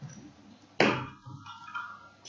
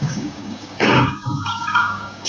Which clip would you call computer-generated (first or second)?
second